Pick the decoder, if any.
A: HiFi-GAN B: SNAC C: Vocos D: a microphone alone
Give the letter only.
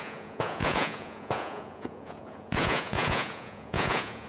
C